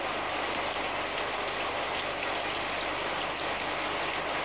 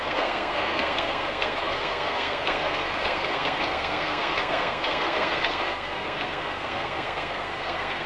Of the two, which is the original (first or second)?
first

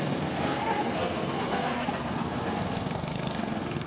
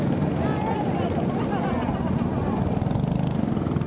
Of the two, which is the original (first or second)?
second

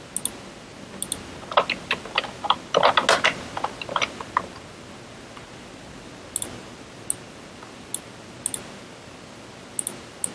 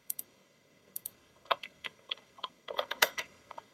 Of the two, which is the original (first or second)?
first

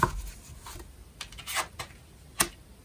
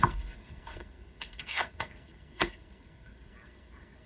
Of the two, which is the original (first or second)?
first